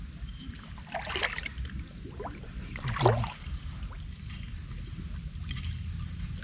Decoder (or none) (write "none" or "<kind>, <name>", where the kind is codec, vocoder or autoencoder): none